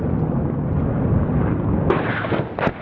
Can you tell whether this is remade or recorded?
recorded